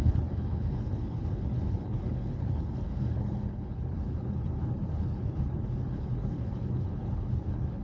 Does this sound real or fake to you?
fake